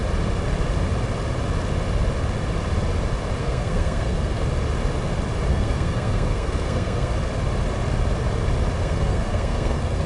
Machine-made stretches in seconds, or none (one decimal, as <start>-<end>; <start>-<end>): 3.4-4.4; 5.5-7.1; 8.8-10.1